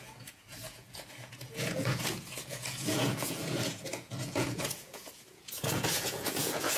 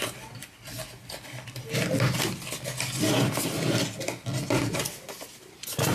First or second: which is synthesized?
first